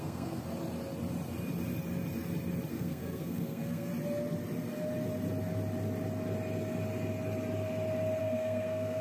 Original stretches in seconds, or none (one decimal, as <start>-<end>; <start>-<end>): 0.4-2.7; 3.9-8.2